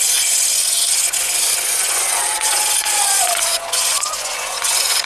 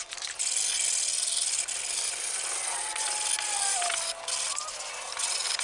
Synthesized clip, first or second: first